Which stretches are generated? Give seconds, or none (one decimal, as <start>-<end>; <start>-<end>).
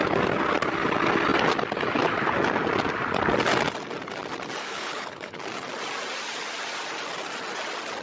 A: 4.6-5.4